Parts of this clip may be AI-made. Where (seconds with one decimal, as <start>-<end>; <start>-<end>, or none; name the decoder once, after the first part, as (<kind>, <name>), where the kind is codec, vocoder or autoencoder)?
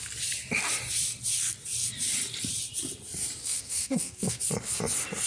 3.4-4.4 (codec, SNAC)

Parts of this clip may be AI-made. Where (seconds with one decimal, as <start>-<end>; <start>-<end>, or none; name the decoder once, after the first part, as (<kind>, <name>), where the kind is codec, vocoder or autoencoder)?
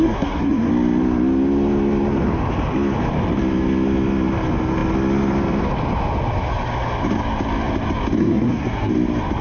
0.0-0.7 (codec, SNAC); 8.2-8.9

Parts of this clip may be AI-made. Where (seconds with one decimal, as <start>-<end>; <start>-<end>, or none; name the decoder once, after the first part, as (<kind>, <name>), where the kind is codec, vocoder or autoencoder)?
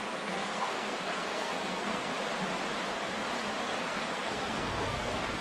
0.0-2.1 (codec, SNAC); 3.6-5.4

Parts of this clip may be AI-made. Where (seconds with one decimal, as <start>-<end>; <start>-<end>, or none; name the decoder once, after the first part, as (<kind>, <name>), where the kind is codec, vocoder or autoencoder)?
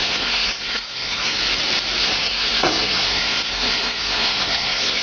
0.0-1.4 (codec, SNAC); 2.0-5.0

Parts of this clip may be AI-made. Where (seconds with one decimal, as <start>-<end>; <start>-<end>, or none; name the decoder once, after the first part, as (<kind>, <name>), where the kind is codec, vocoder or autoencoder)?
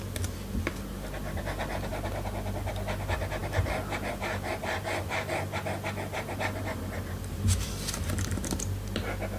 none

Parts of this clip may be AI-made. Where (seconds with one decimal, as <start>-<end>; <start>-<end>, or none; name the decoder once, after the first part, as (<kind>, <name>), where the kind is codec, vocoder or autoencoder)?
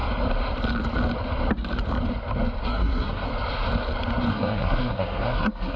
2.6-3.3 (codec, SNAC); 4.3-5.8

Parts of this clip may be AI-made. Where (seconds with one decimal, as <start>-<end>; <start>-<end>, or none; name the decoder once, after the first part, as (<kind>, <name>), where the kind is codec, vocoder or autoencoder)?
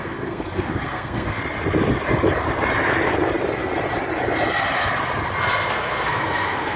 0.0-1.4 (codec, SNAC); 5.5-6.8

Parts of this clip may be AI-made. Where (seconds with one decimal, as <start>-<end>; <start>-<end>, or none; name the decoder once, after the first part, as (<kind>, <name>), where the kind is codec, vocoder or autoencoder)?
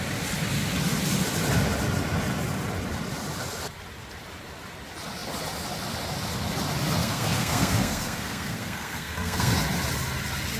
7.0-9.5 (codec, SNAC)